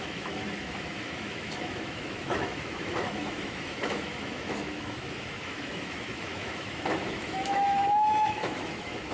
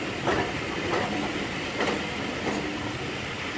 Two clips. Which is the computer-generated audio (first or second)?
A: first